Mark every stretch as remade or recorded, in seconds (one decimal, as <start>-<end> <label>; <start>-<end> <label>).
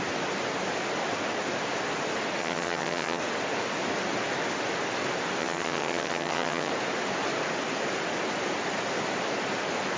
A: 0.0-2.4 recorded; 2.4-3.2 remade; 3.2-5.4 recorded; 5.4-6.7 remade; 6.7-10.0 recorded